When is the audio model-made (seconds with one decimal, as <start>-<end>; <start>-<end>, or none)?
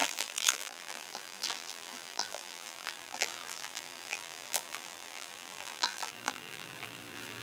0.0-7.4